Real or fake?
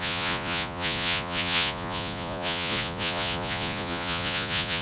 fake